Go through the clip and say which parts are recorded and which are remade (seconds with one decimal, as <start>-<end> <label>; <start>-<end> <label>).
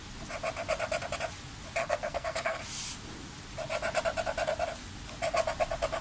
0.0-1.8 recorded; 1.8-2.6 remade; 2.6-6.0 recorded